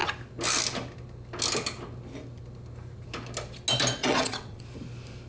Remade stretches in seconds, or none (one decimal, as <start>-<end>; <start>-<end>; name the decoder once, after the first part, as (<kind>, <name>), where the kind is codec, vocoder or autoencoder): 4.0-4.6 (vocoder, WaveNeXt)